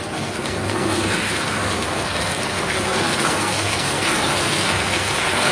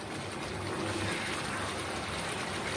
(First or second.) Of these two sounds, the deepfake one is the first